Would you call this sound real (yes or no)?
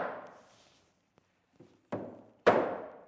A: no